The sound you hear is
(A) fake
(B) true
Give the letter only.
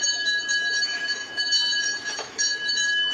A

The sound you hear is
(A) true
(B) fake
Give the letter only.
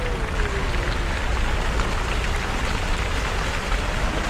A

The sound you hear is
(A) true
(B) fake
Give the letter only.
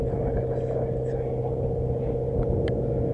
A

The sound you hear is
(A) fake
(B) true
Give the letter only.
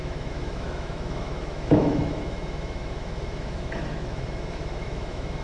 A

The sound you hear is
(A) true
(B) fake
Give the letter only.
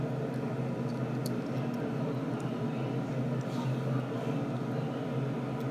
A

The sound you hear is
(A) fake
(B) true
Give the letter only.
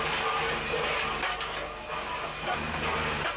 B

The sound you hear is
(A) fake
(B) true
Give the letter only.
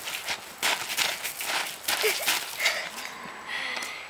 B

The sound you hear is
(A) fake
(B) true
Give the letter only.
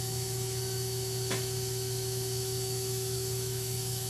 A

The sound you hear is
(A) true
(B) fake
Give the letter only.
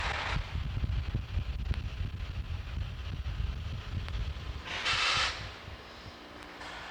A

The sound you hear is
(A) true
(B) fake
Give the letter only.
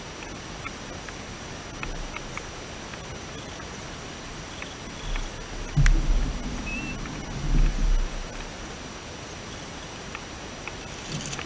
A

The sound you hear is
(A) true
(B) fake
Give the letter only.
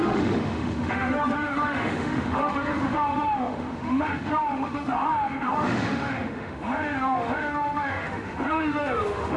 B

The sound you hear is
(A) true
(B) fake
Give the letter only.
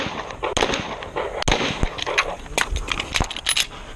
A